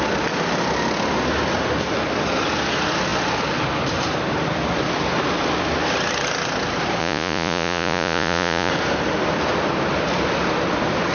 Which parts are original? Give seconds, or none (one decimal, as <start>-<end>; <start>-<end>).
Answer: 0.0-7.0; 8.7-11.1